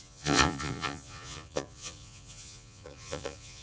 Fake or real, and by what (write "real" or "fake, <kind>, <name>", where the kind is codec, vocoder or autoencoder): fake, vocoder, Vocos